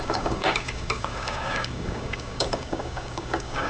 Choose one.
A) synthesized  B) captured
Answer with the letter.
A